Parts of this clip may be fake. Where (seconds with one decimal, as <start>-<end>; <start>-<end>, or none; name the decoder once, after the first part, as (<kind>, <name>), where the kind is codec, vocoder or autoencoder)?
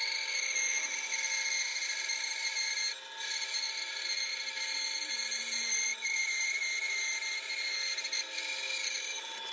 1.7-2.9 (vocoder, BigVGAN v2); 4.3-5.1